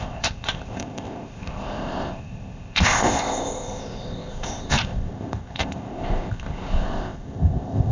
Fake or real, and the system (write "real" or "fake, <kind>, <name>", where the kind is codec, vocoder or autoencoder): fake, codec, ZipCodec